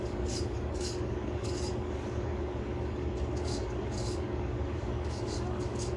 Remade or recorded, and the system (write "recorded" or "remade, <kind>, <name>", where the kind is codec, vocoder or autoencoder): remade, codec, DAC